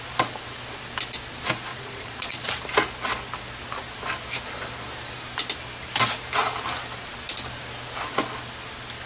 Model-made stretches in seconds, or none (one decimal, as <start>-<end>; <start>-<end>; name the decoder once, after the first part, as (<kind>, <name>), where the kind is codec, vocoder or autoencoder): 1.7-2.5 (vocoder, Vocos)